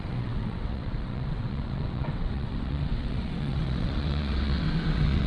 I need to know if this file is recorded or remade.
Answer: remade